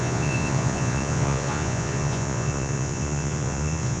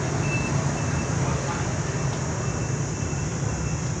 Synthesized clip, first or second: first